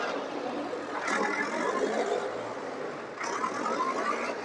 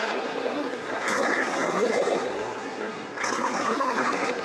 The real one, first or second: first